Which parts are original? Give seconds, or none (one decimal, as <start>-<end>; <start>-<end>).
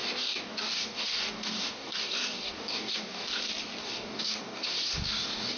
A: 3.4-3.8